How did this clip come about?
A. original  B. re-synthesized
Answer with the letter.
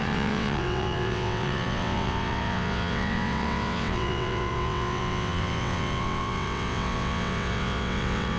B